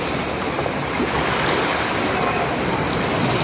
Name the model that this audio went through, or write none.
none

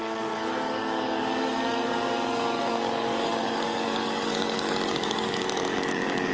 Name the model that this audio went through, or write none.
codec, DAC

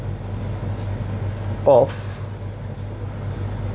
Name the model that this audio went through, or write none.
none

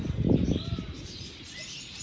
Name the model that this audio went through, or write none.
none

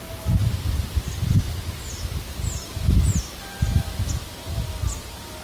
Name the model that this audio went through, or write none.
none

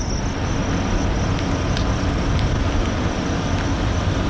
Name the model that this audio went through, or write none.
none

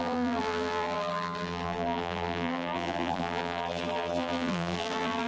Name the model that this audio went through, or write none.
vocoder, BigVGAN v2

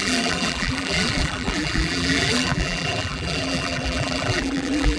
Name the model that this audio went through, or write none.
vocoder, BigVGAN v2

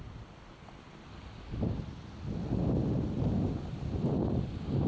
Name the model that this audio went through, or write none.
none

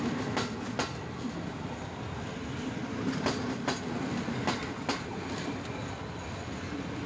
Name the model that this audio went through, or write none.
none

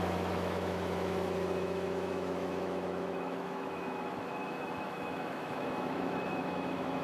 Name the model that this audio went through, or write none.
autoencoder, DAC-VAE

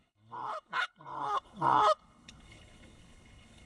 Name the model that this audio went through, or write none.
codec, HILCodec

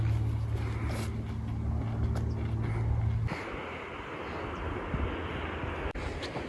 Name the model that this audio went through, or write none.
none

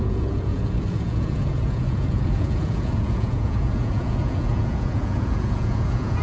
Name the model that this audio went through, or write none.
vocoder, Vocos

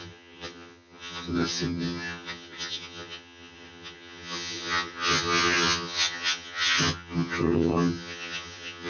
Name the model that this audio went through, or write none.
vocoder, HiFi-GAN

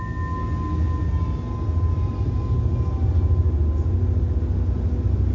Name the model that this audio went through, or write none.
none